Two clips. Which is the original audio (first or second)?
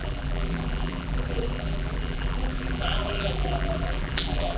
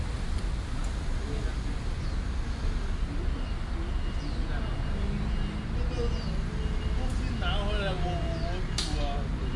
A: second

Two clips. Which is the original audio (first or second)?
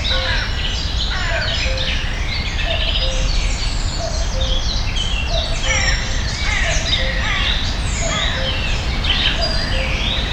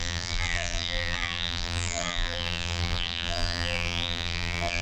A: first